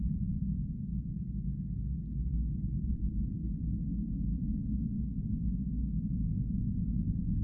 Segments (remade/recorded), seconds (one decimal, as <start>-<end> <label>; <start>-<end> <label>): 0.0-7.4 recorded

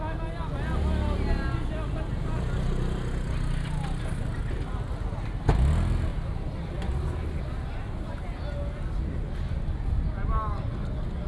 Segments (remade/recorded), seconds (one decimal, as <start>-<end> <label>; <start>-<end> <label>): 0.0-11.3 recorded